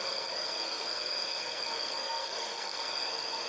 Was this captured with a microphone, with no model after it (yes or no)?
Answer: no